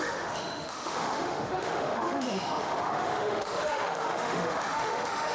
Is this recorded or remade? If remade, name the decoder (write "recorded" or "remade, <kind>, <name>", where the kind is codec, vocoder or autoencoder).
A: remade, autoencoder, DAC-VAE